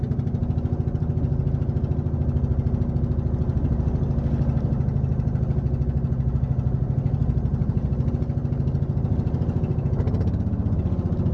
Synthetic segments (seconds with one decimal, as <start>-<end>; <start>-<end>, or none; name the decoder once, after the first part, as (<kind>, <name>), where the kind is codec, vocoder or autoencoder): 7.5-8.1 (vocoder, BigVGAN v2)